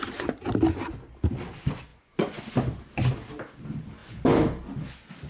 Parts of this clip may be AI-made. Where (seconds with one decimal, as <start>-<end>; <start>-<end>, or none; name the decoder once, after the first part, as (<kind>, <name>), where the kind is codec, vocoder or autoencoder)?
1.9-2.4 (vocoder, Vocos)